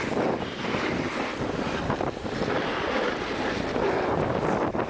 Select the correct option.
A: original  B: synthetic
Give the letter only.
A